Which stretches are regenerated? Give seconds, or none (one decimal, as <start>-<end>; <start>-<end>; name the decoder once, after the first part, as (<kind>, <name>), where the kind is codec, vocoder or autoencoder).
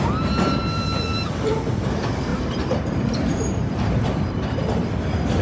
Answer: 0.6-1.7 (vocoder, BigVGAN v2); 2.3-4.6